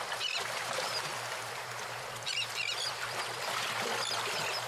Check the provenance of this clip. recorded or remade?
remade